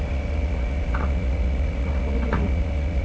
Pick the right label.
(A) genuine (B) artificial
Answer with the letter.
B